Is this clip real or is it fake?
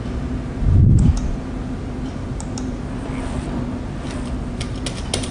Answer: real